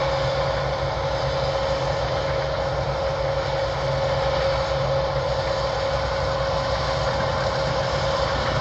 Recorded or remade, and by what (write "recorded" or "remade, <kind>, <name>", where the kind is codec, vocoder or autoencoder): recorded